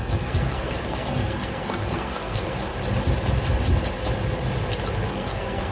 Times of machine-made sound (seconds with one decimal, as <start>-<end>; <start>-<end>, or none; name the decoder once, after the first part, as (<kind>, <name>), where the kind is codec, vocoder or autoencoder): 0.0-2.7 (codec, SNAC); 5.1-5.7